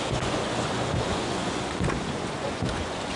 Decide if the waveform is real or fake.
fake